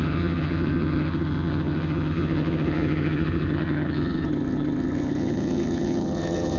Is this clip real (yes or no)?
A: no